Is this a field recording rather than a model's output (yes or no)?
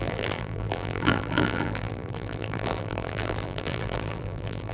no